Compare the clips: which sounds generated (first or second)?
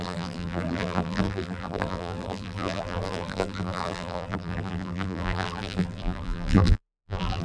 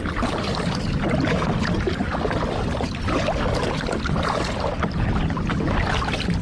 first